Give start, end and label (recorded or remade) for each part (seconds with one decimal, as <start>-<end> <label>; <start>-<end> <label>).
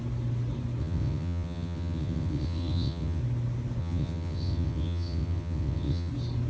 0.0-0.8 recorded; 0.8-3.2 remade; 3.2-3.8 recorded; 3.8-6.1 remade; 6.1-6.5 recorded